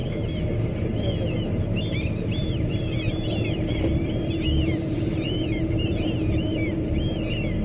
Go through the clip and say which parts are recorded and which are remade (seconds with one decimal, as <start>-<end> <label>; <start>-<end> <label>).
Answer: 0.0-2.4 recorded; 2.4-7.0 remade; 7.0-7.6 recorded